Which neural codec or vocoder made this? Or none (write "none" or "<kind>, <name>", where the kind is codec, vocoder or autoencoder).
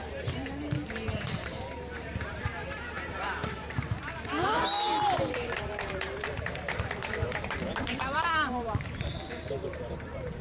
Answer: vocoder, BigVGAN v2